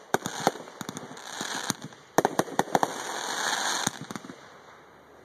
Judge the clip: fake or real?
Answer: real